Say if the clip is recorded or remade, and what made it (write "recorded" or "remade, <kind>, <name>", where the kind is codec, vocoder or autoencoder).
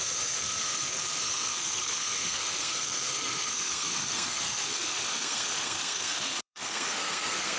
remade, codec, SNAC